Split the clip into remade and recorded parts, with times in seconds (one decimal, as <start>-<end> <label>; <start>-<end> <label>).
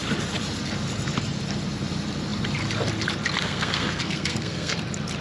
0.0-3.4 recorded; 3.4-4.8 remade; 4.8-5.2 recorded